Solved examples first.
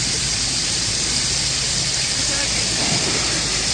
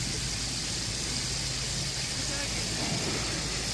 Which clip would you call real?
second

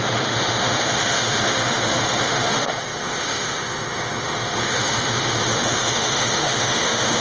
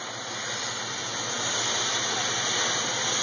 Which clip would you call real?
second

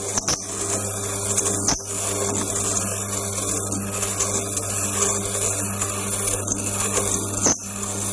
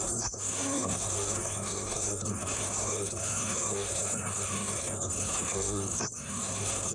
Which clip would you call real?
first